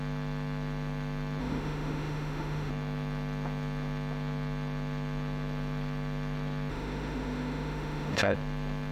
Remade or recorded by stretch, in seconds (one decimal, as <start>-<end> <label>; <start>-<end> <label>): 0.0-1.4 recorded; 1.4-2.7 remade; 2.7-6.7 recorded; 6.7-8.2 remade; 8.2-8.9 recorded

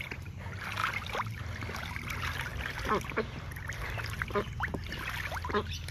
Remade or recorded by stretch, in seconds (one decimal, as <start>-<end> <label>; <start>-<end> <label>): 0.0-5.9 recorded

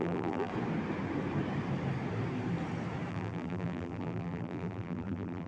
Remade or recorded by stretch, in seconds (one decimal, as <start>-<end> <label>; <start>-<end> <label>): 0.0-0.5 remade; 0.5-3.1 recorded; 3.1-5.5 remade

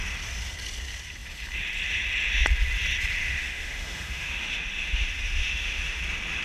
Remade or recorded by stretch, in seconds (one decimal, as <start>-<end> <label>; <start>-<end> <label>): 0.0-3.2 recorded; 3.2-6.0 remade; 6.0-6.4 recorded

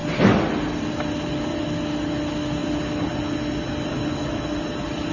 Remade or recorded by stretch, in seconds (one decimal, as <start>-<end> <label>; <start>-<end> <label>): 0.0-5.1 recorded